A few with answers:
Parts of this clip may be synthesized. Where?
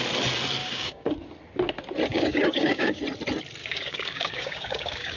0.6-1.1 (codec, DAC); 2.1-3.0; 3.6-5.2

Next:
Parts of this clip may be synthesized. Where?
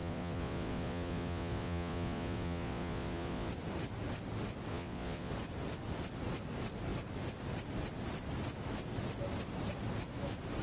0.0-3.5 (vocoder, Vocos); 4.7-5.3